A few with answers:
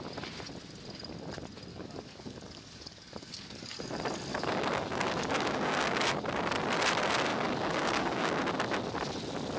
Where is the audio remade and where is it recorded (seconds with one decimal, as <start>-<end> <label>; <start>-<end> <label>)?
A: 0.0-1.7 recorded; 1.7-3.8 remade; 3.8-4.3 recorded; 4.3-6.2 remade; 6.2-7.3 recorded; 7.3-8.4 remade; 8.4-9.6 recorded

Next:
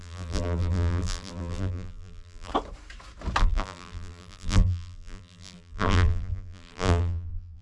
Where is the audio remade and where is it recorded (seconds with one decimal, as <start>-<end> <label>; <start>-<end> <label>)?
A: 0.0-2.5 remade; 2.5-3.4 recorded; 3.4-7.6 remade

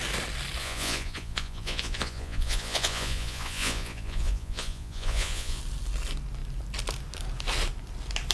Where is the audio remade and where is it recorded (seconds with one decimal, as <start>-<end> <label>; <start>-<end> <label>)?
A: 0.0-0.6 recorded; 0.6-5.6 remade; 5.6-8.3 recorded

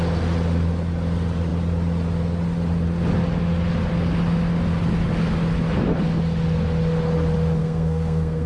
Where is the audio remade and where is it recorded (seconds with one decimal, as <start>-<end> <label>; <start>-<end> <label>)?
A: 0.0-7.6 recorded; 7.6-8.5 remade

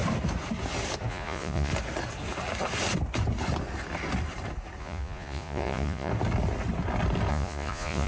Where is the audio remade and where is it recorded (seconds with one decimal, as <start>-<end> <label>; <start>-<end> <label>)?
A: 0.0-1.1 recorded; 1.1-1.7 remade; 1.7-4.8 recorded; 4.8-6.1 remade; 6.1-7.3 recorded; 7.3-8.1 remade

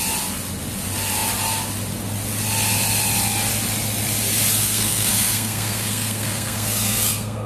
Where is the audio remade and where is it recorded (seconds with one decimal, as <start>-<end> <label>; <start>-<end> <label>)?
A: 0.0-4.6 recorded; 4.6-7.5 remade

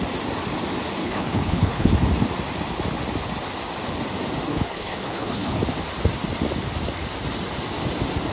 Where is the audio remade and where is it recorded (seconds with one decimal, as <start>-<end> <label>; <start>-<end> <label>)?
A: 0.0-1.0 recorded; 1.0-1.9 remade; 1.9-4.5 recorded; 4.5-5.6 remade; 5.6-8.3 recorded